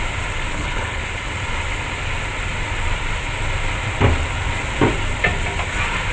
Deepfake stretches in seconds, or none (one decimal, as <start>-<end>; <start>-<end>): 0.5-1.0